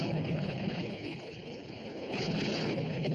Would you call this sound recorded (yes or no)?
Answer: no